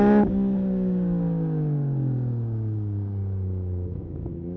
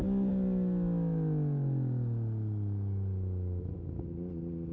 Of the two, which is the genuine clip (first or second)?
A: second